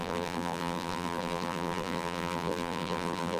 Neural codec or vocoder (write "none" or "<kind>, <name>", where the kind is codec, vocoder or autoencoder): vocoder, BigVGAN v2